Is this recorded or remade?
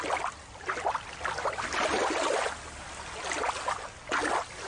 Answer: recorded